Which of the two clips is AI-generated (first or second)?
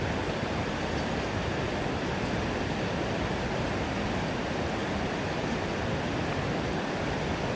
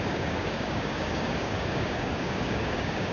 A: second